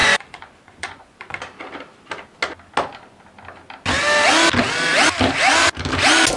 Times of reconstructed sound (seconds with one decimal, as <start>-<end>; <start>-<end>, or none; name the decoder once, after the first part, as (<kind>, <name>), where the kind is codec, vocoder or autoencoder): 0.0-1.4 (vocoder, Vocos)